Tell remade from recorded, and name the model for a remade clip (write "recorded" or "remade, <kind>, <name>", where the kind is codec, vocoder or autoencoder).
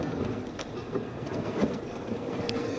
remade, codec, SNAC